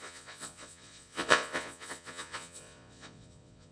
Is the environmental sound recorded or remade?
remade